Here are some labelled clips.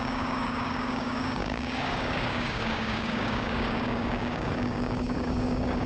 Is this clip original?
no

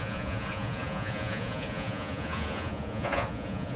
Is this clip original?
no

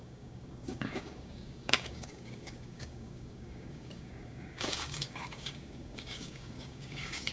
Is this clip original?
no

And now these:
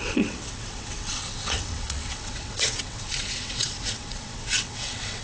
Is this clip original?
no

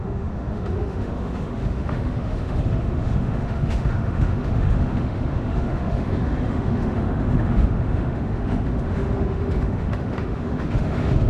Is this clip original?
no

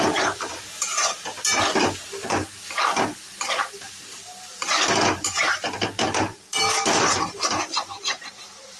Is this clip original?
no